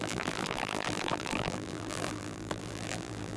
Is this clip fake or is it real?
fake